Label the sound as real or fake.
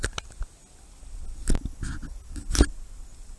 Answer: real